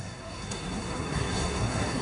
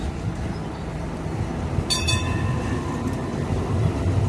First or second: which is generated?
first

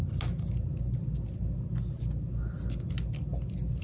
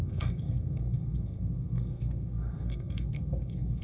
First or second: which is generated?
second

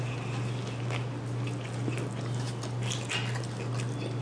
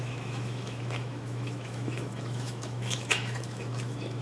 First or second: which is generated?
second